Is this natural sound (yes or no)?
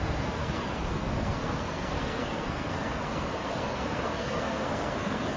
no